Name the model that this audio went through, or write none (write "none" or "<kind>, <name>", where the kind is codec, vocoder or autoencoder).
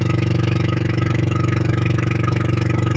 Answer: autoencoder, DAC-VAE